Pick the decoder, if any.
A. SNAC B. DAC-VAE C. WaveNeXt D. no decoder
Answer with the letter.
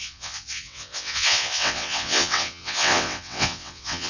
C